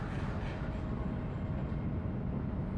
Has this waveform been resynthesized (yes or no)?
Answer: no